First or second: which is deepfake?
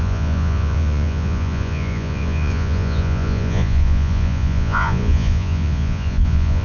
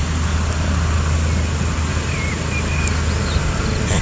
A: first